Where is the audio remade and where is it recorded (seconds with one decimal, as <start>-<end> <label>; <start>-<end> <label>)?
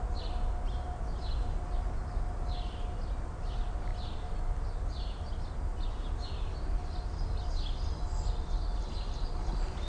0.0-9.9 recorded